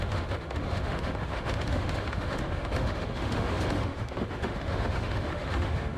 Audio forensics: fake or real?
fake